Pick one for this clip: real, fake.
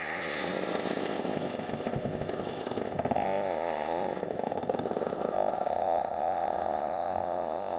fake